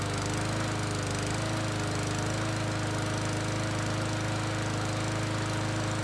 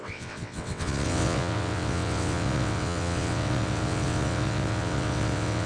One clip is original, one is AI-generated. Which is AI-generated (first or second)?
second